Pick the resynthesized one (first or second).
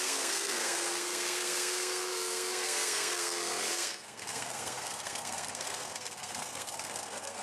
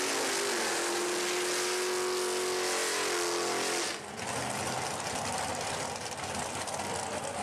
first